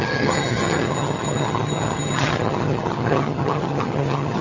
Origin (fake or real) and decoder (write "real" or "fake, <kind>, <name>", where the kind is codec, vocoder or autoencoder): fake, vocoder, HiFi-GAN